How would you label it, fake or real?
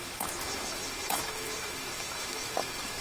fake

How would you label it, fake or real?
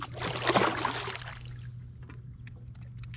real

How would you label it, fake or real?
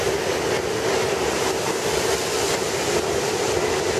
real